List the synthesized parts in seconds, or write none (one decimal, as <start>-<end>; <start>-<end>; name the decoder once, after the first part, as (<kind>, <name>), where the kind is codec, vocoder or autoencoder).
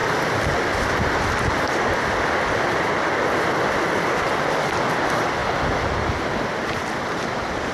4.5-5.4 (vocoder, BigVGAN v2); 6.8-7.7